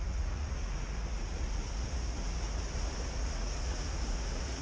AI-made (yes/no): yes